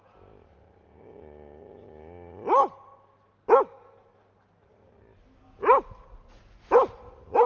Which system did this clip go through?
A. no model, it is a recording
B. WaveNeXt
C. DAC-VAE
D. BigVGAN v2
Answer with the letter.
A